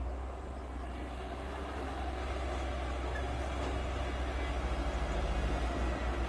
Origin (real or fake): real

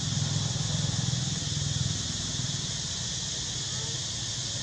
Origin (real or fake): real